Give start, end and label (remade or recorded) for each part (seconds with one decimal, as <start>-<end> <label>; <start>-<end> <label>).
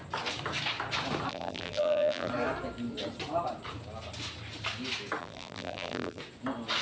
0.0-1.3 recorded; 1.3-2.3 remade; 2.3-5.2 recorded; 5.2-6.2 remade; 6.2-6.8 recorded